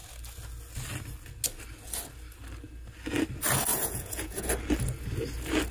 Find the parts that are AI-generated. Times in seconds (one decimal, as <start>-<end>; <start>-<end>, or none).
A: 3.7-4.5